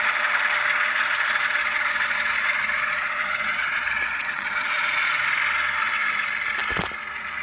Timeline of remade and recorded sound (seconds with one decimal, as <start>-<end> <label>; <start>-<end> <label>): 0.0-1.6 recorded; 1.6-5.1 remade; 5.1-7.4 recorded